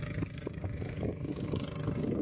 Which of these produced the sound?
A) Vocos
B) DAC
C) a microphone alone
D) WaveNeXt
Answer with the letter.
B